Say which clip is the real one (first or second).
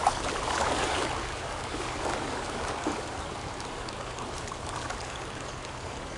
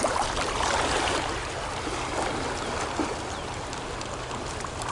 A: second